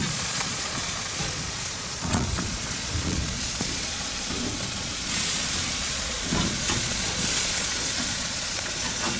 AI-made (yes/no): yes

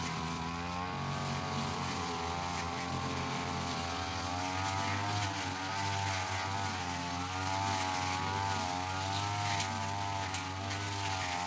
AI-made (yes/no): no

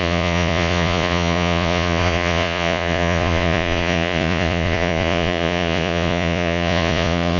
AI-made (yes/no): yes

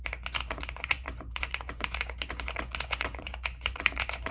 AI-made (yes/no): yes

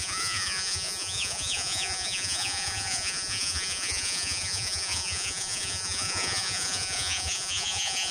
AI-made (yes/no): yes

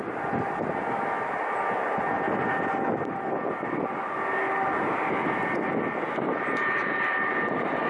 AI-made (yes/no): no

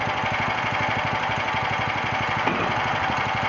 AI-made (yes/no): no